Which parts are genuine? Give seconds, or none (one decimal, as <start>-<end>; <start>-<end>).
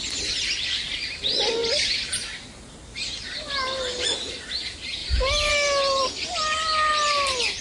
0.0-7.6